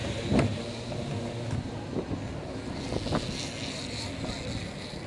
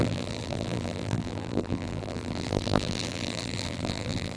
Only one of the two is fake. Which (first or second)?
second